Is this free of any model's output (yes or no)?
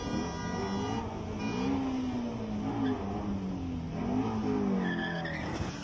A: yes